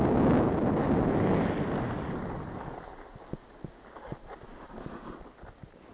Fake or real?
real